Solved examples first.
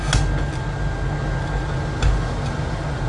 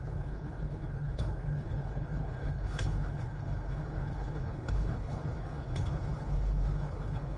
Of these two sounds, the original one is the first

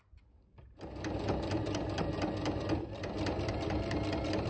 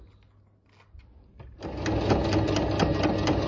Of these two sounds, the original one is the second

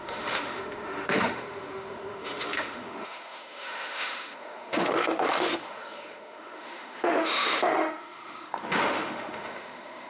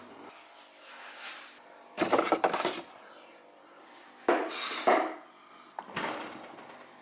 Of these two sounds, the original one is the second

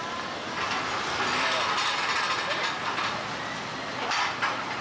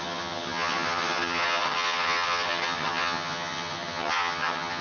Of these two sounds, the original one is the first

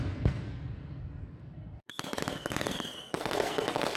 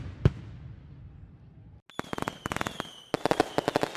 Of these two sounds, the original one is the second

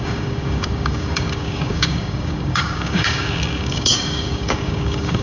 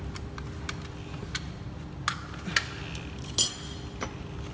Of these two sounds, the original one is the second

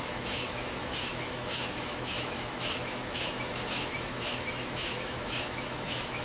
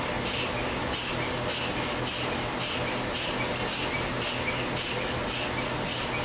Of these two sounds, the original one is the second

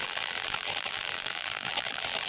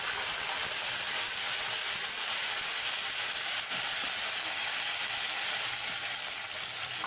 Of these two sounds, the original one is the second